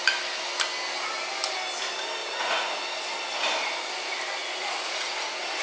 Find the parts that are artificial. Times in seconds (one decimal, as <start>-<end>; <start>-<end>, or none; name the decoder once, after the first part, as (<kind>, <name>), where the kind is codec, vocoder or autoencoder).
2.2-2.7 (vocoder, Vocos); 4.4-5.6